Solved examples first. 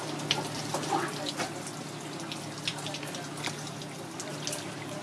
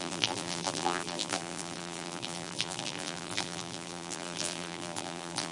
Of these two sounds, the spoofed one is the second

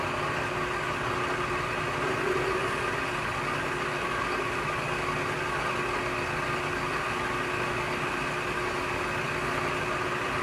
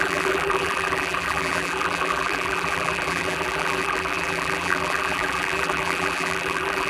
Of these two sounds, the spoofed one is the second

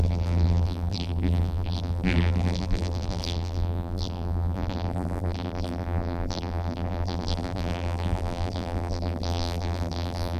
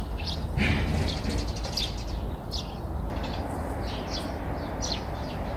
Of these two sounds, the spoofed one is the first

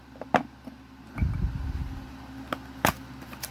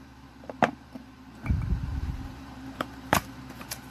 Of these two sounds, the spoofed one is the second